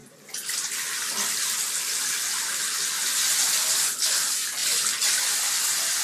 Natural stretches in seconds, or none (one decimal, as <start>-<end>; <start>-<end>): 0.0-6.0